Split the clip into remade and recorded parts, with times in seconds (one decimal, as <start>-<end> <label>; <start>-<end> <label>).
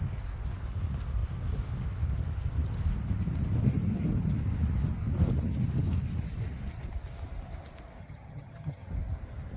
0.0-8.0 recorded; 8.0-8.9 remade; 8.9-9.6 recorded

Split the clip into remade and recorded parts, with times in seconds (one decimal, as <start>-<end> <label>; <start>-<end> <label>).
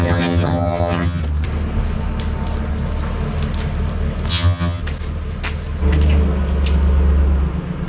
0.0-1.2 remade; 1.2-4.3 recorded; 4.3-4.8 remade; 4.8-7.9 recorded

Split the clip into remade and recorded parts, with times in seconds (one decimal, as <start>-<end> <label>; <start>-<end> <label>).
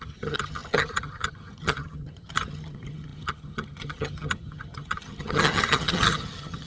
0.0-6.7 remade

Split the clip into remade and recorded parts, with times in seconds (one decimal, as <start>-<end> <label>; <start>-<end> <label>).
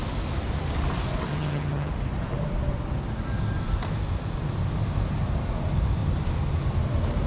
0.0-1.3 recorded; 1.3-1.9 remade; 1.9-7.3 recorded